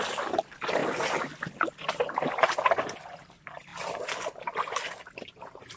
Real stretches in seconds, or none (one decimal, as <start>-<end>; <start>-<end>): 0.0-5.8